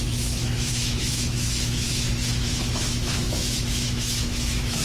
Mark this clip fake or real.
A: fake